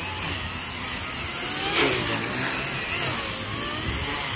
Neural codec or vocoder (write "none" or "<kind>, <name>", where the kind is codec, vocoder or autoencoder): none